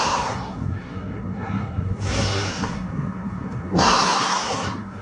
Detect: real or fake fake